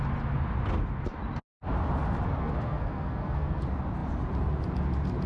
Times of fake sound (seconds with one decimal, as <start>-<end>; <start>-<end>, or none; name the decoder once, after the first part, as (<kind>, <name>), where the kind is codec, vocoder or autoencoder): 2.4-3.6 (codec, SNAC)